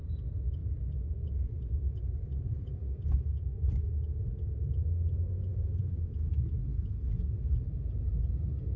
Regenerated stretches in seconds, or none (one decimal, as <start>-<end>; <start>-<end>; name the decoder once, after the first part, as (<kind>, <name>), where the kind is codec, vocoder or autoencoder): 0.6-3.5 (vocoder, BigVGAN v2)